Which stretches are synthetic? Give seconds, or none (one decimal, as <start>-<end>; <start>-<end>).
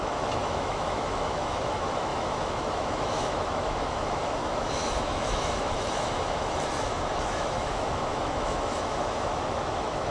0.0-10.1